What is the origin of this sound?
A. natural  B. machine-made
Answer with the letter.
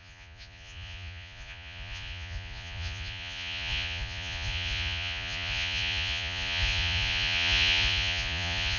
B